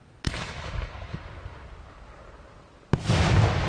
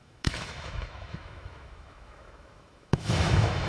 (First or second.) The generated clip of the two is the second